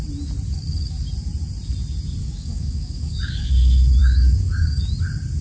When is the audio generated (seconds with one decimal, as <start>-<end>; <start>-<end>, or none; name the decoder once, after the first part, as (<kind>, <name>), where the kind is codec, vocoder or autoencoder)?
2.2-3.5 (codec, DAC); 4.0-4.8